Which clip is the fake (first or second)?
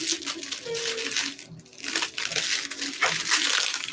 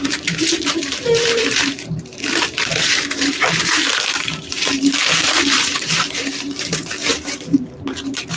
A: second